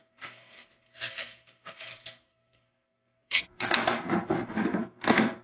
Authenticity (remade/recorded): remade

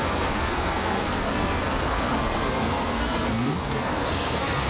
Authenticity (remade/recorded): remade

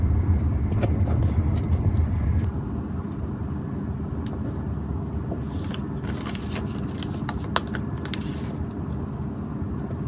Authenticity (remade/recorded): recorded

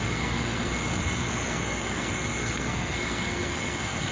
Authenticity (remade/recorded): remade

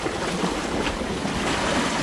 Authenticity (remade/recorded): recorded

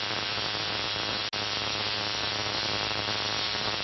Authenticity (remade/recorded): recorded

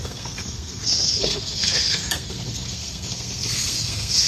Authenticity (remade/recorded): remade